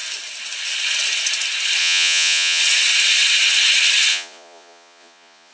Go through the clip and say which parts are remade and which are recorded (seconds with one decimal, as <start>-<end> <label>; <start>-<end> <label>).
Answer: 0.0-1.8 recorded; 1.8-2.6 remade; 2.6-4.1 recorded; 4.1-5.5 remade